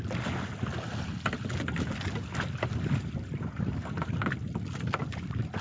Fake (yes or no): no